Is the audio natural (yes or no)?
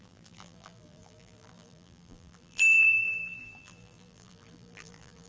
no